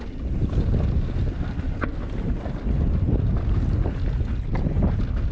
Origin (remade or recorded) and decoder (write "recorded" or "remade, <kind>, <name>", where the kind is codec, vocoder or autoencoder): recorded